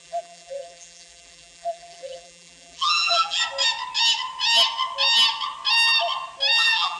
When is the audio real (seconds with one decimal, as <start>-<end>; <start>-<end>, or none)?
3.4-6.6

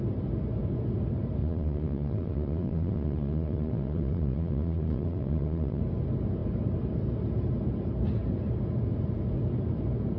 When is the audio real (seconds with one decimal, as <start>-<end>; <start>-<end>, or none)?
0.0-1.4; 5.8-10.2

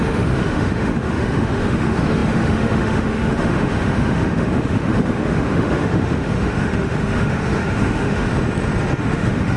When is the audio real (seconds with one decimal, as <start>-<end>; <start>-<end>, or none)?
8.3-9.0

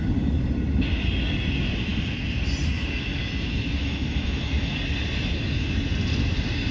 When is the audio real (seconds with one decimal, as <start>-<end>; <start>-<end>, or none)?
0.0-3.8; 4.7-6.7

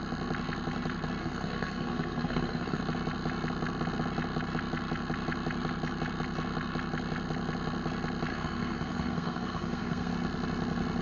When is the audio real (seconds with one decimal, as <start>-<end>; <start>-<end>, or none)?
0.0-1.2; 2.8-8.3; 10.1-11.0

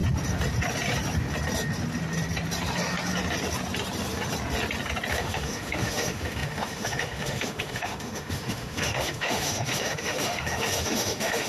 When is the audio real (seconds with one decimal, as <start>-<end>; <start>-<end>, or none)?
0.0-5.1